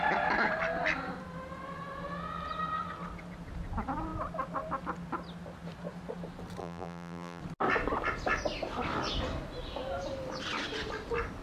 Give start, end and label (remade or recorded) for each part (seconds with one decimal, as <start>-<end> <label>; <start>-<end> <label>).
0.0-6.6 recorded; 6.6-7.4 remade; 7.4-11.4 recorded